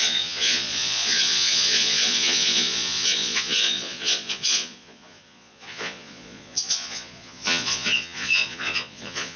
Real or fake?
fake